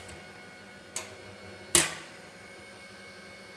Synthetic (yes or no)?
no